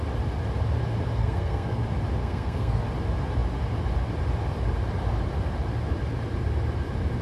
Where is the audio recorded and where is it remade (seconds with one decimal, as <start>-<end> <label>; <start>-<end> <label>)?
0.0-1.2 recorded; 1.2-1.8 remade; 1.8-2.2 recorded; 2.2-2.8 remade; 2.8-7.2 recorded

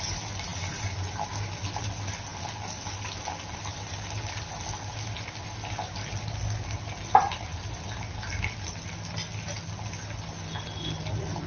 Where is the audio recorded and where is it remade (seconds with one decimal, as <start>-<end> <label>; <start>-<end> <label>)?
0.0-11.5 recorded